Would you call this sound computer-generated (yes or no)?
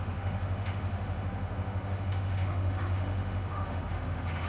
yes